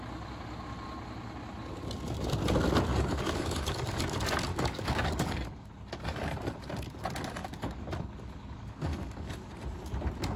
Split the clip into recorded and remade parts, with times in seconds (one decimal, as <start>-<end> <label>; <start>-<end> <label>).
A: 0.0-2.9 recorded; 2.9-4.0 remade; 4.0-4.5 recorded; 4.5-5.7 remade; 5.7-7.4 recorded; 7.4-9.5 remade; 9.5-10.4 recorded